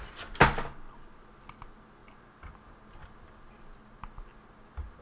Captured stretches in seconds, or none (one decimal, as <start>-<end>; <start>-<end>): 0.0-5.0